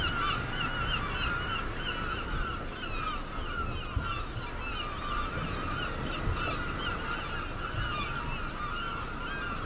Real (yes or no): yes